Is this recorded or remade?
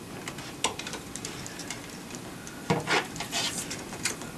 recorded